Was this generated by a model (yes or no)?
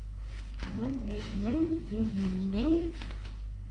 yes